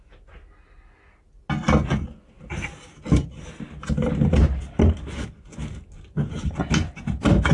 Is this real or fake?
real